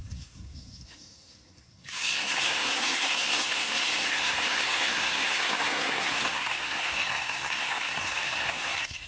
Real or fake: fake